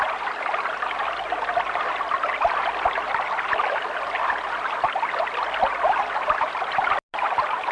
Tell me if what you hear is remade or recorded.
recorded